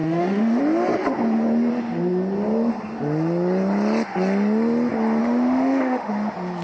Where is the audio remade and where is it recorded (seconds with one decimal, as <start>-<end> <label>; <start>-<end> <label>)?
0.0-0.6 remade; 0.6-5.2 recorded; 5.2-6.1 remade; 6.1-6.6 recorded